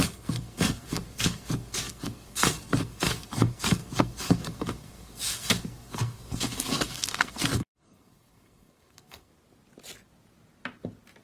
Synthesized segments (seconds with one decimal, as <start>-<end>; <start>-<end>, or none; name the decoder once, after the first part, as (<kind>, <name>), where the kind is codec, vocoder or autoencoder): 0.0-9.3 (codec, SNAC)